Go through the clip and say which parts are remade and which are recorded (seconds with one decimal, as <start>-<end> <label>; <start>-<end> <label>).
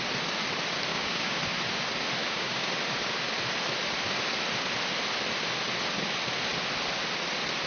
0.0-0.9 recorded; 0.9-1.4 remade; 1.4-2.2 recorded; 2.2-2.7 remade; 2.7-7.7 recorded